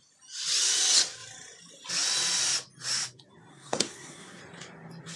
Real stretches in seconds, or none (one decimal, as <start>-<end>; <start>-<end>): 0.0-3.5; 4.4-5.2